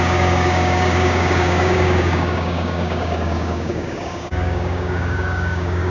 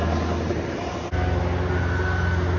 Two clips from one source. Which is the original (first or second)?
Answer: second